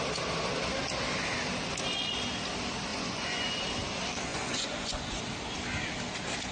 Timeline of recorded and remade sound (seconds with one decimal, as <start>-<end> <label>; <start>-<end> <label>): 0.0-2.9 recorded; 2.9-3.6 remade; 3.6-4.3 recorded; 4.3-5.2 remade; 5.2-6.5 recorded